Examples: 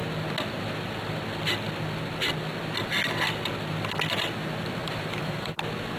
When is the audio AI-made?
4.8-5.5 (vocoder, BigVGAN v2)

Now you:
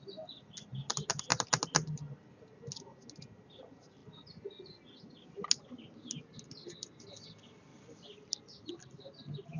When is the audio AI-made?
7.7-8.7 (vocoder, BigVGAN v2)